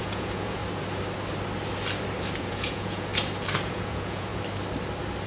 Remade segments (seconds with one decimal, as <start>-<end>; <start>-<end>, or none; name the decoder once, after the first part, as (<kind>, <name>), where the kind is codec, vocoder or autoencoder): 0.0-0.6 (vocoder, Vocos); 2.4-3.1; 3.7-4.3